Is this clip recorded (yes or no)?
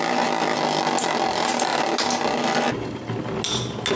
yes